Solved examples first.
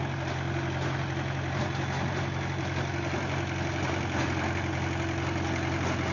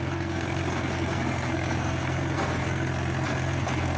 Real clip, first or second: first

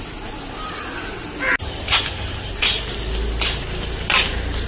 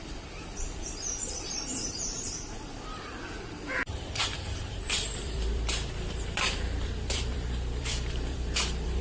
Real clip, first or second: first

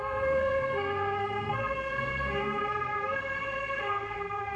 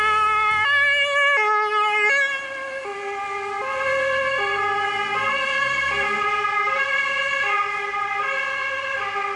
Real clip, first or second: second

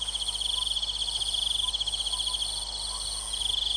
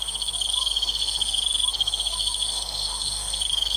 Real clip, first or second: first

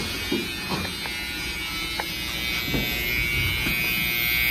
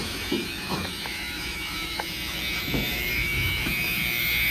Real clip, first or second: first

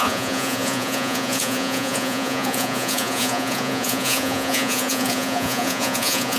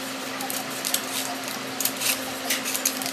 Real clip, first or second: second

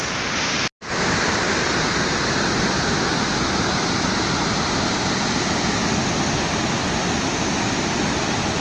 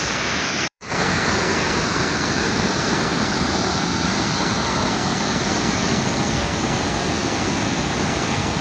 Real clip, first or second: first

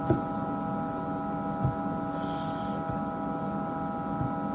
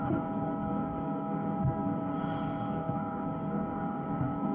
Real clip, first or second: first